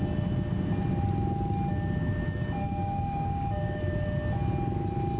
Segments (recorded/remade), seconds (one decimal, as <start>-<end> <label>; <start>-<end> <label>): 0.0-2.6 recorded; 2.6-3.8 remade; 3.8-5.2 recorded